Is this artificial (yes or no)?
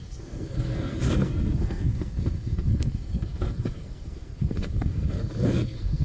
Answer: yes